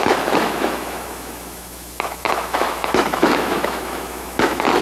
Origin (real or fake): fake